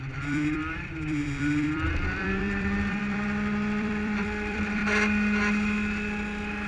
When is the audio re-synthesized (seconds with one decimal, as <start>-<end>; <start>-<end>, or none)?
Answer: 0.0-4.8